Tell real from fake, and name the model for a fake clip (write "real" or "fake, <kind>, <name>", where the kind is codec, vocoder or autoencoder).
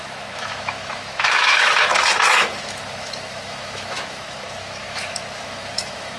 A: fake, autoencoder, DAC-VAE